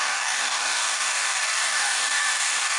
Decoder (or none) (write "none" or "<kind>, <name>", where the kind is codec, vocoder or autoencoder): codec, DAC